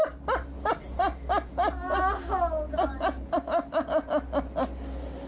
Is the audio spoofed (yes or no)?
no